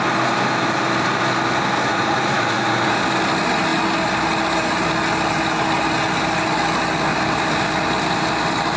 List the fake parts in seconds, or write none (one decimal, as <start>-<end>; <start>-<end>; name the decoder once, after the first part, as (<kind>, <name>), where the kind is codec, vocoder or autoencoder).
1.9-3.0 (vocoder, Vocos)